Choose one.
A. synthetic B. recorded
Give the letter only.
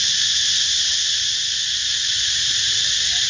B